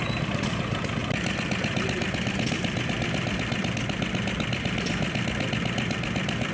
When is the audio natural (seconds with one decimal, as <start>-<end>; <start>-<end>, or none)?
0.0-1.0; 4.9-6.5